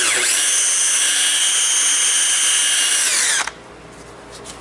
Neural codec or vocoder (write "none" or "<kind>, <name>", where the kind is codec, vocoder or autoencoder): none